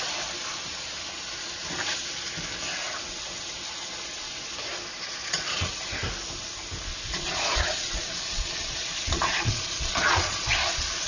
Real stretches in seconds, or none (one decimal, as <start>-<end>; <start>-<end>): 0.0-5.2; 5.7-6.9